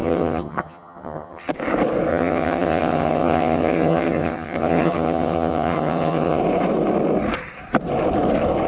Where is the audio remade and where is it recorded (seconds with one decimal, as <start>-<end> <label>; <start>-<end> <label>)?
0.0-1.5 remade; 1.5-2.1 recorded; 2.1-6.4 remade; 6.4-8.7 recorded

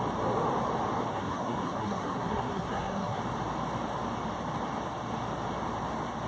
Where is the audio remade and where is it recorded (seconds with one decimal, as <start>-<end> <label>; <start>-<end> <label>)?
0.0-1.1 recorded; 1.1-3.2 remade; 3.2-6.3 recorded

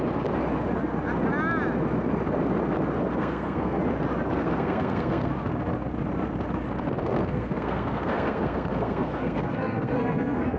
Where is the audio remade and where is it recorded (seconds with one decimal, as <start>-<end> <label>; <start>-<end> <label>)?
0.0-3.2 recorded; 3.2-3.8 remade; 3.8-4.4 recorded; 4.4-5.3 remade; 5.3-7.0 recorded; 7.0-10.6 remade

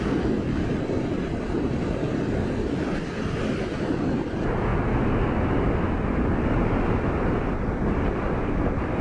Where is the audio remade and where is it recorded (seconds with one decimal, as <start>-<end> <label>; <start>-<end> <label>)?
0.0-9.0 recorded

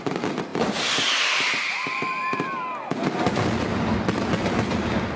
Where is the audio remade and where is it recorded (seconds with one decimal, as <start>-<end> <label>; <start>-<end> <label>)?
0.0-5.2 recorded

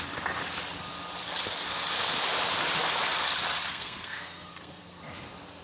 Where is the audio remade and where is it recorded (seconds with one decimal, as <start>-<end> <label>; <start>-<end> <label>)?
0.0-3.7 recorded; 3.7-5.0 remade; 5.0-5.6 recorded

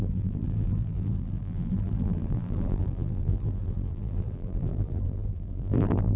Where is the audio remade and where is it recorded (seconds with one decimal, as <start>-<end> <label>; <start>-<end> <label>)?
0.0-6.2 remade